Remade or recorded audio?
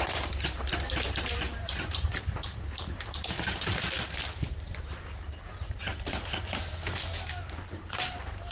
remade